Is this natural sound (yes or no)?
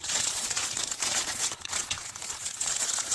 no